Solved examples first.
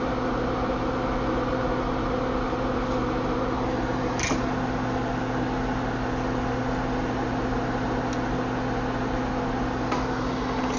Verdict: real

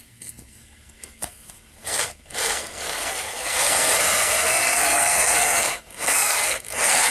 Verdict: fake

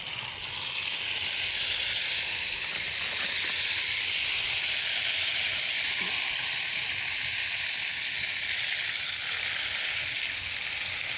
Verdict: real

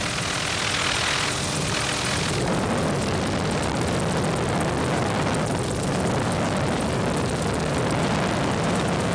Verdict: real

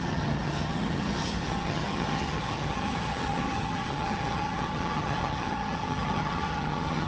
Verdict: fake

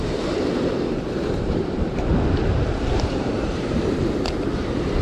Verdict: fake